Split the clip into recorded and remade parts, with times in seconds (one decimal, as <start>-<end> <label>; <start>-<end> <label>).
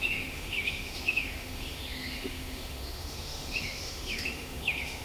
0.0-5.0 remade